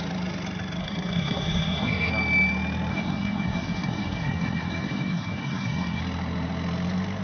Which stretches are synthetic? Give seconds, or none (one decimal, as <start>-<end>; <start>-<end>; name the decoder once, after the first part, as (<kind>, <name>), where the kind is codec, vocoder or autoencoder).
0.8-2.1 (codec, SNAC); 2.9-6.0